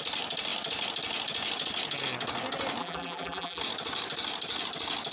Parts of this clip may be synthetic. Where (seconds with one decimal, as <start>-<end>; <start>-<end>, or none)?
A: 2.8-3.6